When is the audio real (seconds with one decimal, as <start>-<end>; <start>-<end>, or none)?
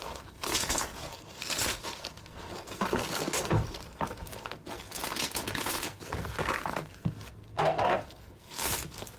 none